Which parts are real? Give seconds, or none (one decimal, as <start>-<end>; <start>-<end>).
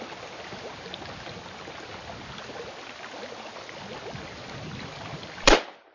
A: 0.0-5.9